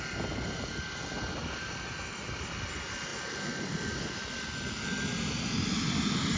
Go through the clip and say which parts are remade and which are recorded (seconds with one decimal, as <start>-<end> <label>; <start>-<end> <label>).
0.0-6.4 recorded